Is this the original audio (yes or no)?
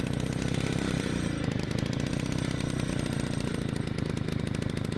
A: yes